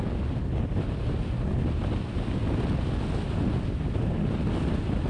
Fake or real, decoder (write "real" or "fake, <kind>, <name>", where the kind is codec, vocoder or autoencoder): real